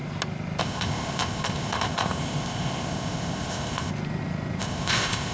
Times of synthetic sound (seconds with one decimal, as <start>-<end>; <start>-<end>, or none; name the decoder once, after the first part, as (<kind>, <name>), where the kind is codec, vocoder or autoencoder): 0.6-3.9 (codec, ZipCodec); 4.6-5.3